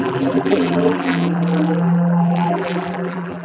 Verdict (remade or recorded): remade